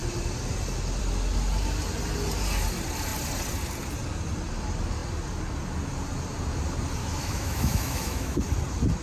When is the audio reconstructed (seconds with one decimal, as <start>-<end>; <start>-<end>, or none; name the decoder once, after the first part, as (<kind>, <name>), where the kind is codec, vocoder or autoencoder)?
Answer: 7.0-8.4 (autoencoder, DAC-VAE)